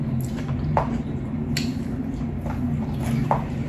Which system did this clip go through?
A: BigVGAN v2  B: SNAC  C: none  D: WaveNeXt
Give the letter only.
C